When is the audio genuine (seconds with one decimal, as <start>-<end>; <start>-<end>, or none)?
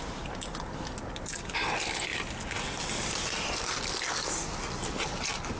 0.0-5.6